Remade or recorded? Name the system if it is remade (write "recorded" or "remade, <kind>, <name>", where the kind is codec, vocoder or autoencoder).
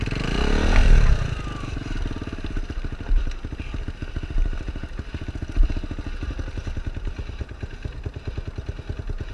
recorded